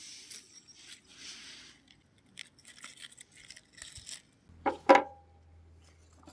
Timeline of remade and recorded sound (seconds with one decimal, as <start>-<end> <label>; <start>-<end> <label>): 0.0-6.3 recorded

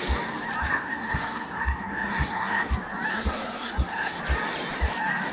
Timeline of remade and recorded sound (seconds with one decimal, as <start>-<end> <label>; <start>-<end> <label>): 0.0-0.6 recorded; 0.6-2.7 remade; 2.7-3.1 recorded; 3.1-4.2 remade; 4.2-5.3 recorded

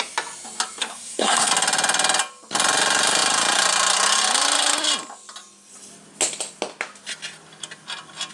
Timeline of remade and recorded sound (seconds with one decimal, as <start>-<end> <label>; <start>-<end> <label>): 0.0-0.8 recorded; 0.8-1.5 remade; 1.5-8.3 recorded

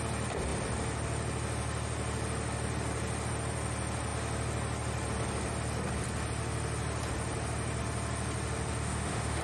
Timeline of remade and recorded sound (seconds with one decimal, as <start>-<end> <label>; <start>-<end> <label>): 0.0-8.8 recorded; 8.8-9.4 remade

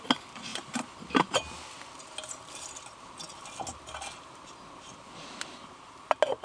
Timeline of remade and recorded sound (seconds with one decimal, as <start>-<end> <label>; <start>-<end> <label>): 0.0-6.4 recorded

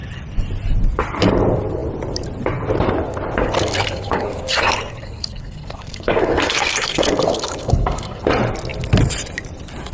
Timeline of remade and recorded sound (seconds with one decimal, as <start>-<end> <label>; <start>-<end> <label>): 0.0-3.4 recorded; 3.4-8.2 remade; 8.2-9.9 recorded